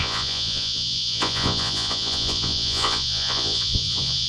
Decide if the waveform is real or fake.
fake